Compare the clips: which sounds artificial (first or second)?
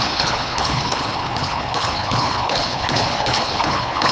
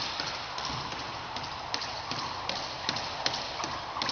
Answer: first